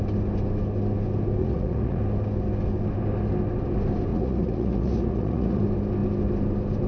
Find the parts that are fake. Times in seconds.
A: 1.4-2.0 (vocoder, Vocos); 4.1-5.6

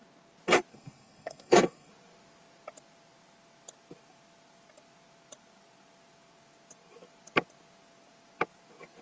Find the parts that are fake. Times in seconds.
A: 0.7-1.9 (codec, SNAC)

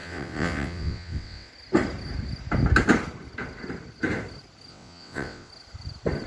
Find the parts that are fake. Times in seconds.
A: 0.0-1.5 (vocoder, WaveNeXt); 4.7-5.5

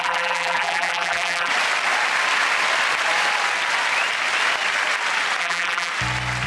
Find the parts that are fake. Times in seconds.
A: 0.0-1.5 (vocoder, BigVGAN v2); 5.4-5.9

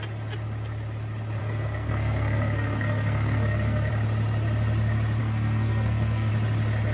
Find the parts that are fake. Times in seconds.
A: 1.4-3.9 (codec, SNAC); 5.2-6.3

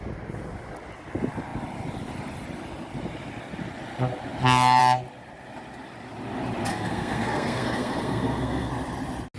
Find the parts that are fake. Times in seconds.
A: 6.7-8.7 (codec, SNAC)

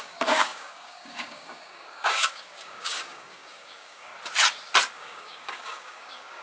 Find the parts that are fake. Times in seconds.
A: 0.0-4.1 (codec, DAC); 4.9-6.4

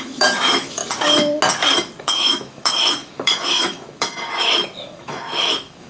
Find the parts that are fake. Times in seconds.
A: 0.0-0.8 (autoencoder, DAC-VAE); 2.0-5.9